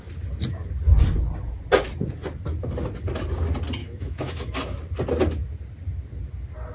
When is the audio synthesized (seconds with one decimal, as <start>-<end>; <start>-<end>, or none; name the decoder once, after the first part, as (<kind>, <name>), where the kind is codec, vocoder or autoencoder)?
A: 3.8-4.6 (autoencoder, DAC-VAE)